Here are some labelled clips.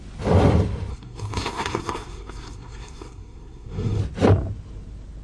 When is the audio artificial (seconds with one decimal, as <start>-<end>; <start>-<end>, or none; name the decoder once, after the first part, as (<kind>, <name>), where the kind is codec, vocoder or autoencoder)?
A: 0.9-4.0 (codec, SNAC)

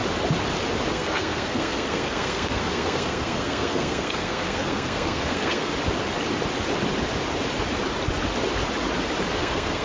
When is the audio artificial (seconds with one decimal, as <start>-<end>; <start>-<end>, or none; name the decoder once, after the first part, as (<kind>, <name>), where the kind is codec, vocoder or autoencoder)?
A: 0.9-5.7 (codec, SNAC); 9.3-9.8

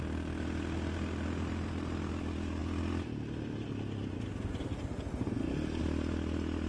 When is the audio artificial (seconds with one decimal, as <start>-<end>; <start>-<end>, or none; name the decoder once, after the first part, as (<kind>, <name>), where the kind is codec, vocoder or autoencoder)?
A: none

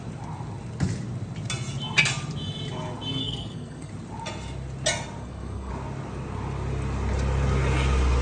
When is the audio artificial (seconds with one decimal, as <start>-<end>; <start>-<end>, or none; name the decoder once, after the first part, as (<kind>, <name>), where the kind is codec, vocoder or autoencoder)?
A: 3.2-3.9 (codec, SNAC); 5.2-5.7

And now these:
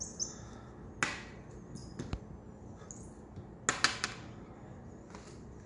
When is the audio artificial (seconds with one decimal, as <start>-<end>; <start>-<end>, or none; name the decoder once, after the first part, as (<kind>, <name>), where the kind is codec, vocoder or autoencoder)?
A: none

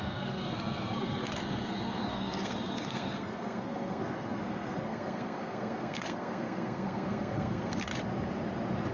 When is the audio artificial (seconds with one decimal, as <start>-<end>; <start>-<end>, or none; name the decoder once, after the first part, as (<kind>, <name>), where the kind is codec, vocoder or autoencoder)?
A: 0.0-7.9 (codec, SNAC)

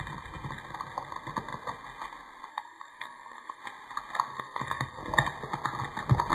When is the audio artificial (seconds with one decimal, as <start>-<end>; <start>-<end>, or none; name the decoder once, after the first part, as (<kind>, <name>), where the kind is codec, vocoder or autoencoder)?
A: 2.5-3.6 (codec, SNAC); 4.3-5.0

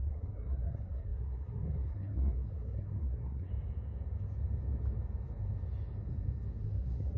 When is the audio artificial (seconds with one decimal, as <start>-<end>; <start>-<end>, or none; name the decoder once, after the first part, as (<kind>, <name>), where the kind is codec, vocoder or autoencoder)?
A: 0.0-3.5 (codec, SNAC); 6.6-7.2